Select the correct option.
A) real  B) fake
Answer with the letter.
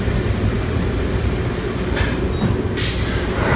A